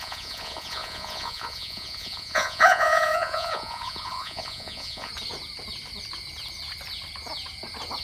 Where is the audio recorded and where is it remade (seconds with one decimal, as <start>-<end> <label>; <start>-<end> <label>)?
0.0-5.1 remade; 5.1-8.0 recorded